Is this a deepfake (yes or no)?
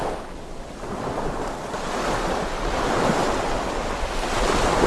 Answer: no